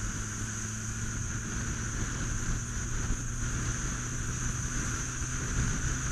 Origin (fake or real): real